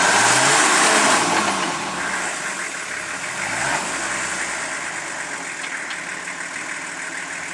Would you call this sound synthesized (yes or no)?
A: no